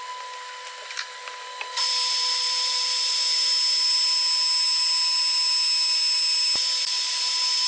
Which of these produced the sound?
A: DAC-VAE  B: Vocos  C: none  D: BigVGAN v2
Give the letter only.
C